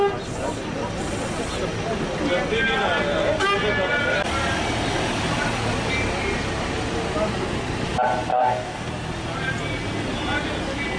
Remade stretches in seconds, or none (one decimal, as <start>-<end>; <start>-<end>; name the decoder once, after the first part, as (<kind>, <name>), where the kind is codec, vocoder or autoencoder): 8.3-8.9 (codec, DAC)